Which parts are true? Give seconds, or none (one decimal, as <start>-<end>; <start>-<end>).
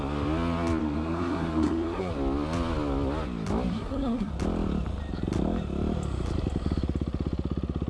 0.0-0.8; 2.1-3.7; 4.3-7.9